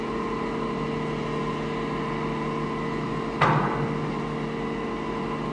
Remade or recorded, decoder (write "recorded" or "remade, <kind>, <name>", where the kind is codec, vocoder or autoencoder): recorded